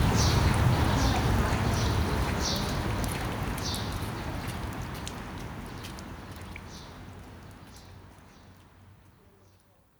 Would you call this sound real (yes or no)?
yes